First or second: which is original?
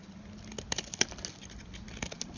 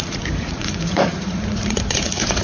first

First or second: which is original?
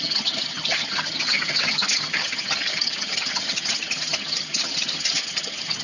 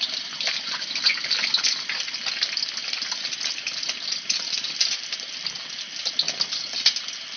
second